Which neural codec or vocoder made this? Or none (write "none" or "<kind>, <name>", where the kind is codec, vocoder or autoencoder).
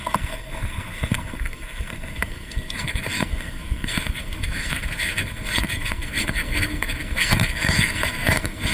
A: codec, SNAC